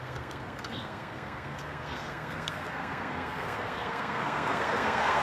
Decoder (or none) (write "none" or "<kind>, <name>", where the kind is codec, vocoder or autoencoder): codec, SNAC